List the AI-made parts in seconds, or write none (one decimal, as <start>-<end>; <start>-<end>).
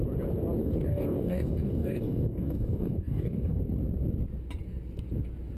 0.6-3.6